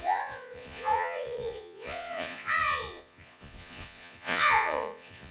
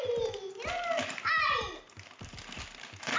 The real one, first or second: second